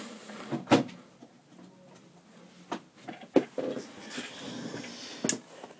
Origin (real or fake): real